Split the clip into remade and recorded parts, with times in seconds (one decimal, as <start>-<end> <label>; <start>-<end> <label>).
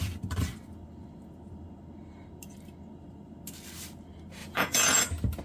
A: 0.0-4.4 recorded; 4.4-5.0 remade; 5.0-5.4 recorded